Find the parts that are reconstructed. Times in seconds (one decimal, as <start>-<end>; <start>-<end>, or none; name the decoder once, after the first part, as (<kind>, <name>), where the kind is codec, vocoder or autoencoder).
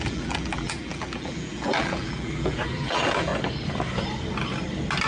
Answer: 0.0-3.3 (vocoder, BigVGAN v2)